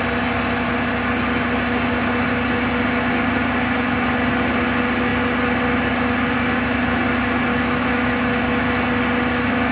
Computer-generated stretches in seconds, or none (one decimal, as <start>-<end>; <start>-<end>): 7.5-8.1